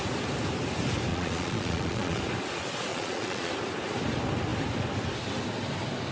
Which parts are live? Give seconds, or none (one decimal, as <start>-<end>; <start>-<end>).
0.0-1.1; 2.2-2.9; 3.5-6.1

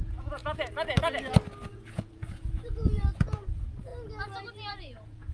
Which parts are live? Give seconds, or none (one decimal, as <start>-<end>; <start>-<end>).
0.4-1.7; 3.9-4.7

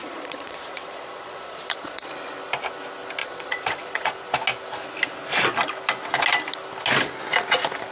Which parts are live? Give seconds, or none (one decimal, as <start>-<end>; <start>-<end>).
2.1-3.2; 4.2-7.9